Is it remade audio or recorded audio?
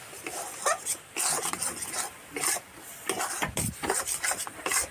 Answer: recorded